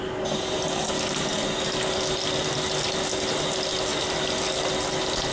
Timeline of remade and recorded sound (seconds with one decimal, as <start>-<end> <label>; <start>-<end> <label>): 0.0-5.3 recorded